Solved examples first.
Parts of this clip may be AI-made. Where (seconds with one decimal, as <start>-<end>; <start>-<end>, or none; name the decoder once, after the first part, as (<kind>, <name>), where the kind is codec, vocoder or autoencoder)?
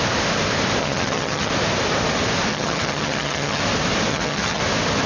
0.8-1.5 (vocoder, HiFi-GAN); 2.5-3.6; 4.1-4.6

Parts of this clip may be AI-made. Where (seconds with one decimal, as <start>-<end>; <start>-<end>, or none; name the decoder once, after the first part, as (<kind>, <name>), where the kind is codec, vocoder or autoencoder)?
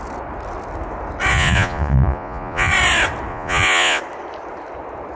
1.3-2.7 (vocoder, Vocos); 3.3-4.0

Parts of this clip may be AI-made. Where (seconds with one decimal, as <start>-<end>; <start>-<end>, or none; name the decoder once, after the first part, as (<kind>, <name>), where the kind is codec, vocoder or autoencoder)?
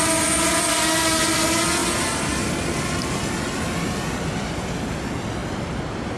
none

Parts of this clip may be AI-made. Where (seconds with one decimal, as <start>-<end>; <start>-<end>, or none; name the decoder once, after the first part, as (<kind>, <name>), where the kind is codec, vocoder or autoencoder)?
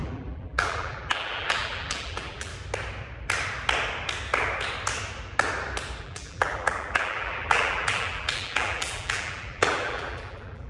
0.0-2.5 (vocoder, BigVGAN v2); 6.0-10.7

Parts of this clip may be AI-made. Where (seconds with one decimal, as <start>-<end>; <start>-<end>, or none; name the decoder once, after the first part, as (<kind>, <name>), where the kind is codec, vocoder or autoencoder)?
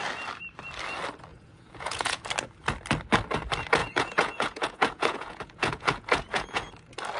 1.3-2.2 (vocoder, Vocos); 3.8-6.7